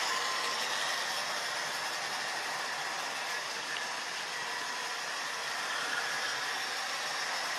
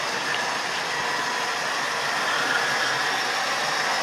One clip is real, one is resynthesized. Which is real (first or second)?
second